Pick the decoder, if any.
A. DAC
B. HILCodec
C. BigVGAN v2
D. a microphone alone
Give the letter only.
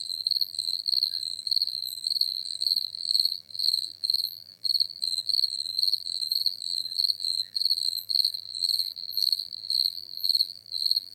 C